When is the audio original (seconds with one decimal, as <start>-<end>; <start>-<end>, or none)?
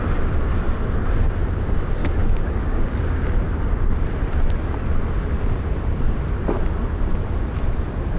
0.0-2.0; 3.3-8.2